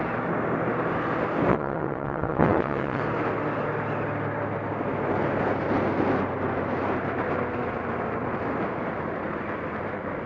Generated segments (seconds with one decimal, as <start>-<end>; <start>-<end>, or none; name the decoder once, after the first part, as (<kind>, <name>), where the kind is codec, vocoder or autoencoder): 1.5-3.0 (vocoder, WaveNeXt)